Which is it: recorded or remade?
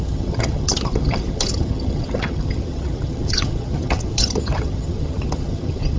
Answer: remade